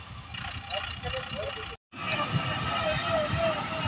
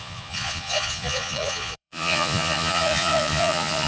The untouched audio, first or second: first